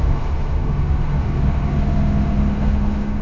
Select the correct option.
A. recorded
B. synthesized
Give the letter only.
B